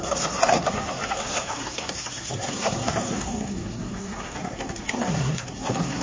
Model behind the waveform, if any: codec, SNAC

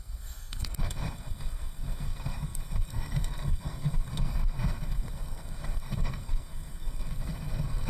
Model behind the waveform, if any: codec, SNAC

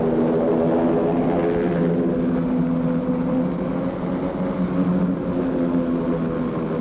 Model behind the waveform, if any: none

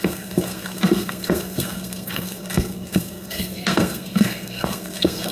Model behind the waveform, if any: codec, SNAC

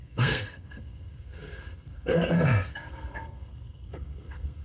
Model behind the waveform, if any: codec, SNAC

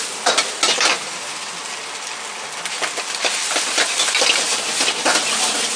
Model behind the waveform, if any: none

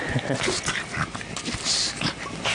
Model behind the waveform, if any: none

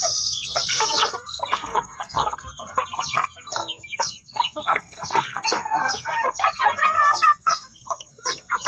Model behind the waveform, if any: codec, SNAC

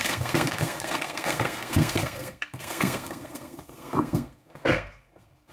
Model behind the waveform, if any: codec, SNAC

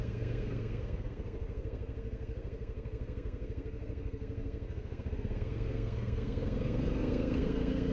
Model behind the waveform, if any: codec, SNAC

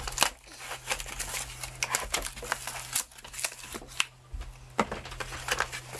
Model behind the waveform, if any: none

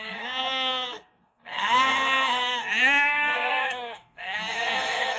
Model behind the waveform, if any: codec, SNAC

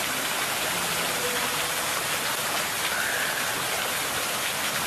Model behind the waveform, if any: none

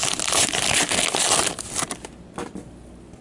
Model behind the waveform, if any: none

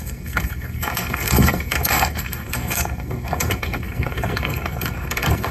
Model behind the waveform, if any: codec, SNAC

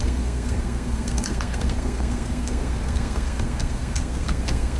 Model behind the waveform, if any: codec, SNAC